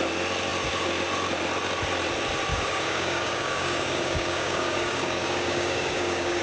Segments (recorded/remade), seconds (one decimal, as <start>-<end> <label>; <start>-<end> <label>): 0.0-2.5 recorded; 2.5-6.4 remade